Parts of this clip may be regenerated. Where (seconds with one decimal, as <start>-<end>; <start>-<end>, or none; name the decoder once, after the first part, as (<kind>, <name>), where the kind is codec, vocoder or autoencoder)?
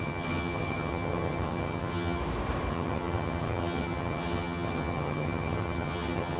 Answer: 0.0-2.2 (vocoder, HiFi-GAN); 2.7-6.4